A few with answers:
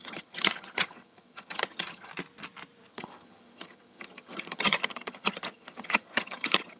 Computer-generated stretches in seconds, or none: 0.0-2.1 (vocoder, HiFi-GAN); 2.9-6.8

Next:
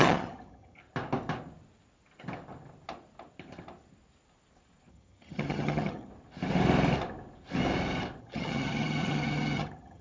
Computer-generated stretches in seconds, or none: 0.0-0.8 (vocoder, HiFi-GAN); 4.9-6.1; 8.2-10.0

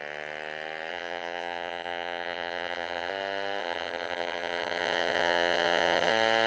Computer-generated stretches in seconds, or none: 0.9-3.1 (vocoder, HiFi-GAN); 3.6-6.1

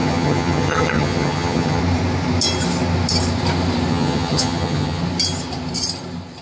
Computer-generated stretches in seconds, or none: 0.0-1.8 (vocoder, HiFi-GAN); 3.9-5.0

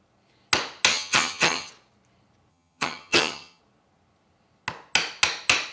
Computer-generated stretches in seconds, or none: 0.9-1.7 (vocoder, HiFi-GAN); 2.5-3.6

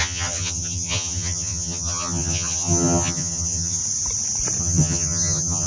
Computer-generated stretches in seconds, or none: 0.0-3.8 (vocoder, HiFi-GAN); 4.6-5.7